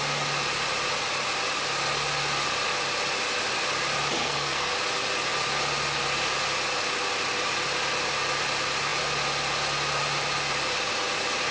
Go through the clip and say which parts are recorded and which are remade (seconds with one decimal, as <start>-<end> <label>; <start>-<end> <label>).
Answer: 0.0-4.2 recorded; 4.2-4.7 remade; 4.7-11.5 recorded